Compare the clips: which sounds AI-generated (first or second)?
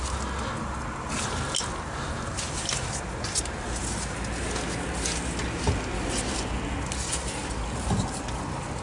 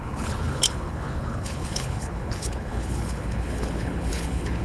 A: second